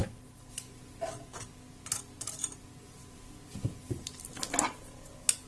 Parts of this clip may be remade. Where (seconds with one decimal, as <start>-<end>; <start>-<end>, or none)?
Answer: none